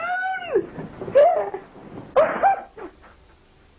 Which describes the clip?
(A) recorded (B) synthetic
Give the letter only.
A